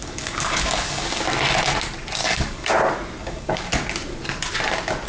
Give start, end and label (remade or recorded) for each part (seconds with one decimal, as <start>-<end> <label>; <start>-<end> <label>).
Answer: 0.0-1.2 remade; 1.2-2.2 recorded; 2.2-2.7 remade; 2.7-3.2 recorded; 3.2-3.7 remade; 3.7-5.1 recorded